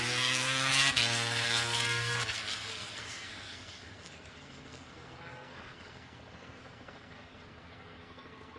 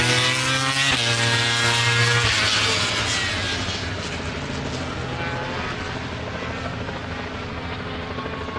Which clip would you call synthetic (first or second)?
first